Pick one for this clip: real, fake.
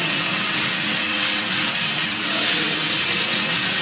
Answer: fake